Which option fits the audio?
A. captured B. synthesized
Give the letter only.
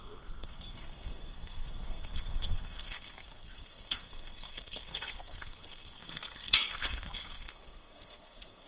B